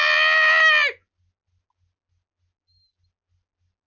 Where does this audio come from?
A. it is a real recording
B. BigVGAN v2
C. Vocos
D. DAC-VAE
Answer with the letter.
A